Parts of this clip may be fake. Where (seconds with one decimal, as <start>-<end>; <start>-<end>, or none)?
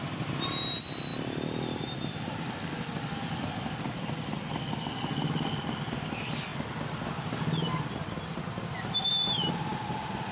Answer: none